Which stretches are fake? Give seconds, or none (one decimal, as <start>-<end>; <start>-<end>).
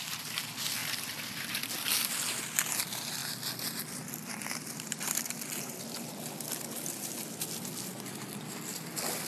none